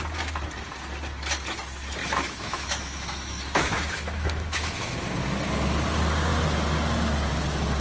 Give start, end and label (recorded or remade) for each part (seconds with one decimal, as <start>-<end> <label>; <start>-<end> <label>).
0.0-2.0 recorded; 2.0-5.0 remade; 5.0-7.8 recorded